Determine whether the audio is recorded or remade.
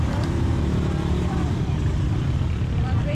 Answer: remade